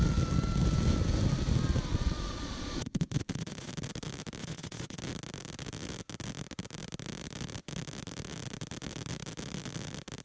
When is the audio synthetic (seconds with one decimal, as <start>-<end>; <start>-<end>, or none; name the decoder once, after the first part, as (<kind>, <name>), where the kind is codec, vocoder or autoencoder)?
1.9-3.7 (vocoder, Vocos); 4.4-5.0